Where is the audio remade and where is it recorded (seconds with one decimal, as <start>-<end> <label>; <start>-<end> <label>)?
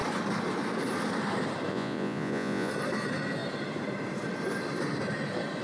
0.0-1.7 recorded; 1.7-2.7 remade; 2.7-5.6 recorded